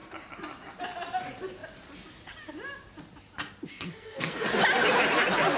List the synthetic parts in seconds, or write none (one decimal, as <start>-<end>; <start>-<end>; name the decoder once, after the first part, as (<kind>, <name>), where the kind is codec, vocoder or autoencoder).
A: 3.7-4.5 (codec, SNAC)